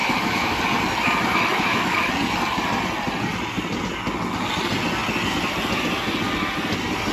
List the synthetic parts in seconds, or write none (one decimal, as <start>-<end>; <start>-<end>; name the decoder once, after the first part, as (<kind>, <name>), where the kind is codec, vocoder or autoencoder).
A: 0.0-0.6 (autoencoder, DAC-VAE); 1.3-2.1